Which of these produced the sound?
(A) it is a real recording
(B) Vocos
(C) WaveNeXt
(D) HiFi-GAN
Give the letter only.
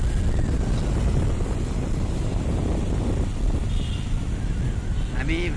A